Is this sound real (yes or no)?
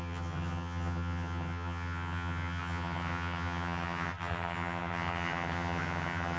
no